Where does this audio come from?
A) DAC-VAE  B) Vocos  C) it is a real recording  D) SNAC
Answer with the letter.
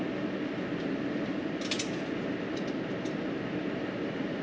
C